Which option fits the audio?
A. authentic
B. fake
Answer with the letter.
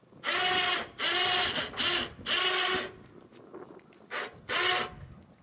A